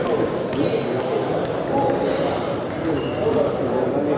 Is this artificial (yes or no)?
no